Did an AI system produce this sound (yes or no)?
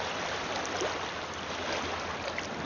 no